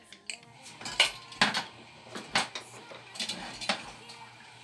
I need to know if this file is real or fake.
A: real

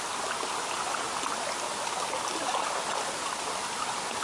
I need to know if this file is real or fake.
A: real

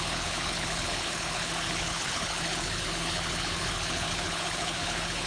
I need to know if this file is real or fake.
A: fake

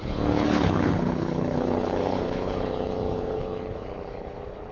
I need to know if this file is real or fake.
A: fake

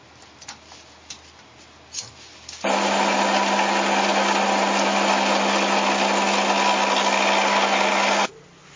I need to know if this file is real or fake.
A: real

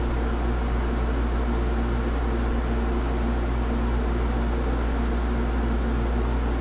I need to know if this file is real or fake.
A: real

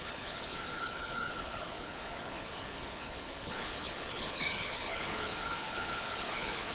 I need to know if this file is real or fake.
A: fake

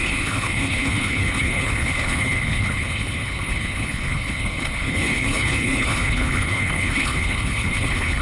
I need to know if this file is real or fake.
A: fake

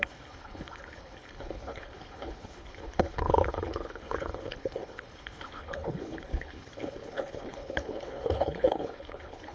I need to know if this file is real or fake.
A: fake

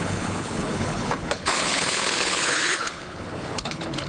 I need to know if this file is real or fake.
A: fake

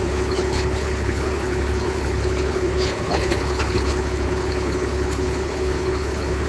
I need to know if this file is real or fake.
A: fake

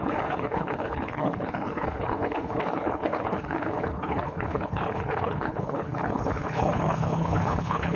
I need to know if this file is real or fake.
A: fake